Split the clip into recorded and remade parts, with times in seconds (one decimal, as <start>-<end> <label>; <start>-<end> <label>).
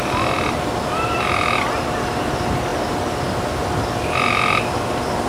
0.0-5.3 recorded